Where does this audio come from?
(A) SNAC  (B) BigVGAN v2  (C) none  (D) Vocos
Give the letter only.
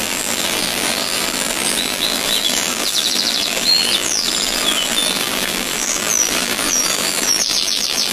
B